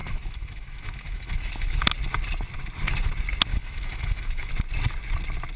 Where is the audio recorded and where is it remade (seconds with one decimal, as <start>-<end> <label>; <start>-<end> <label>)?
0.0-1.8 remade; 1.8-3.5 recorded; 3.5-4.5 remade; 4.5-5.6 recorded